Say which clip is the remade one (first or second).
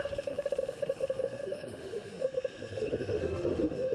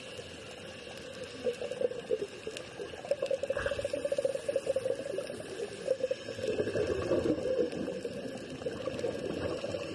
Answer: first